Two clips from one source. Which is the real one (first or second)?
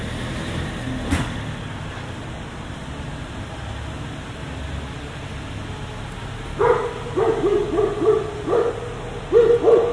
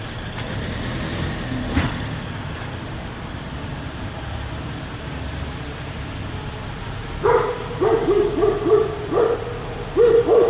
first